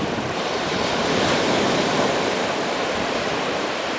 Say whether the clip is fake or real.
fake